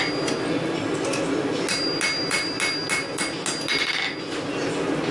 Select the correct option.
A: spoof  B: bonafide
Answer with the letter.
B